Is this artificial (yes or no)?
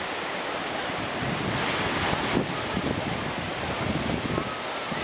no